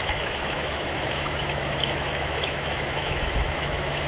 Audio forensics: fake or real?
fake